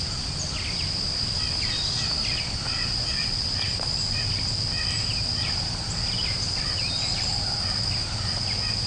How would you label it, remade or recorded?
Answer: recorded